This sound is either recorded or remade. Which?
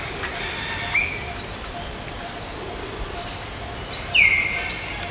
recorded